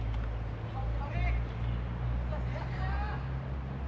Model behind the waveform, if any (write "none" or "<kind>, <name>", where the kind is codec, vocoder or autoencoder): none